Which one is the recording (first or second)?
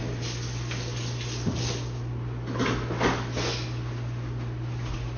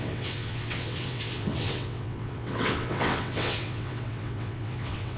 first